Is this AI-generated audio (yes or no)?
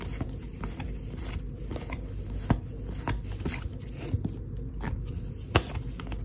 no